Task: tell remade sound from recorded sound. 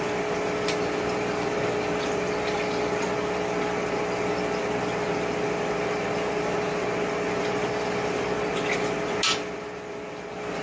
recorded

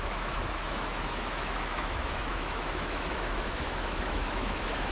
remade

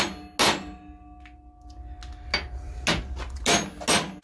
recorded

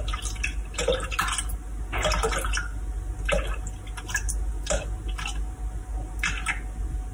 recorded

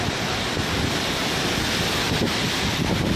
recorded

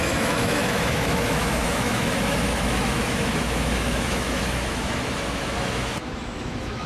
remade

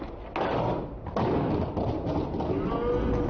recorded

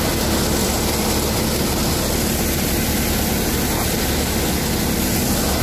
recorded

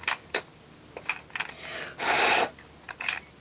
recorded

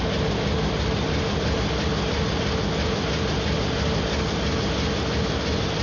recorded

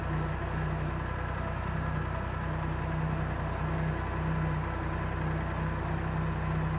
recorded